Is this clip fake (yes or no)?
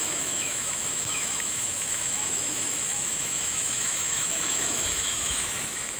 yes